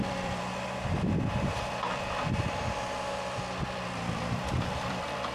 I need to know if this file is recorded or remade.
remade